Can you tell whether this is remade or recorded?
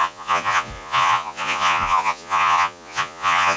remade